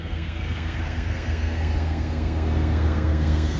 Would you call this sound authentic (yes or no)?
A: no